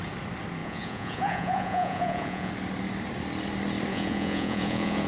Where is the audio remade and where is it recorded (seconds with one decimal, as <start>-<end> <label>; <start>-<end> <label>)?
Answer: 0.0-0.6 recorded; 0.6-2.5 remade; 2.5-3.9 recorded; 3.9-5.1 remade